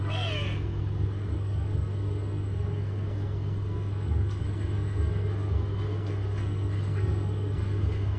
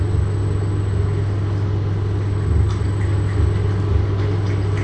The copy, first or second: first